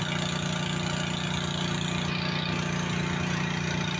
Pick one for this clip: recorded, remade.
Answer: recorded